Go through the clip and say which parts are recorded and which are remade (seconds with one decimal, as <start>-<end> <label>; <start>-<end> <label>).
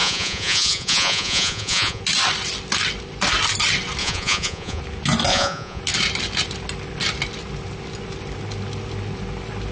0.0-2.0 remade; 2.0-4.0 recorded; 4.0-4.8 remade; 4.8-5.3 recorded; 5.3-5.8 remade; 5.8-9.7 recorded